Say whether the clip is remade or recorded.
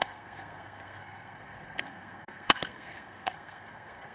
remade